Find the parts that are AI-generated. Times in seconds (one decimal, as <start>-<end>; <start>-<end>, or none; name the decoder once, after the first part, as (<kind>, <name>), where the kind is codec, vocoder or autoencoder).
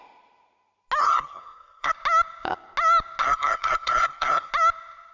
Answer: 1.0-1.9 (codec, SNAC); 3.2-4.5